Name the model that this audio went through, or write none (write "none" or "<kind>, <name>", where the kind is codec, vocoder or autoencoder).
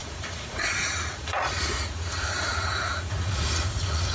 vocoder, Vocos